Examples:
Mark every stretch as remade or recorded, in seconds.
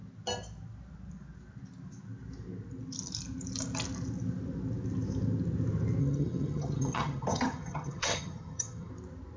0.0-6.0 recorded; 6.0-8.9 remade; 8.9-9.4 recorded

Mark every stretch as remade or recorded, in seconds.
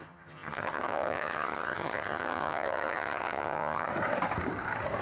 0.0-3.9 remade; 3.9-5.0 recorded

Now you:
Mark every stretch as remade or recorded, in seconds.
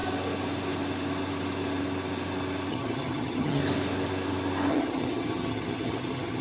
0.0-2.7 recorded; 2.7-3.6 remade; 3.6-4.7 recorded; 4.7-6.4 remade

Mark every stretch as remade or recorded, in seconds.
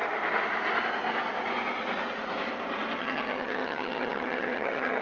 0.0-3.0 recorded; 3.0-5.0 remade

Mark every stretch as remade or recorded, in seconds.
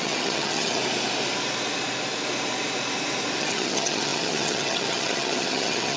0.0-0.8 remade; 0.8-3.4 recorded; 3.4-6.0 remade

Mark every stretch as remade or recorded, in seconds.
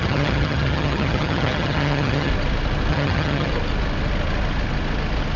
0.0-2.3 remade; 2.3-2.9 recorded; 2.9-3.5 remade; 3.5-5.4 recorded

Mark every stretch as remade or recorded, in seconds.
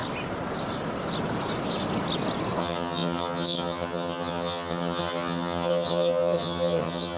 0.0-2.6 recorded; 2.6-7.2 remade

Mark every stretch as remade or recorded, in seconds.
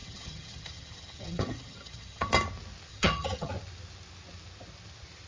0.0-2.3 remade; 2.3-2.9 recorded; 2.9-3.5 remade; 3.5-5.3 recorded